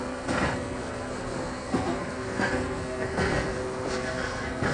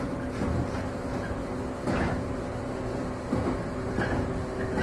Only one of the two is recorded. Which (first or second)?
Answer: second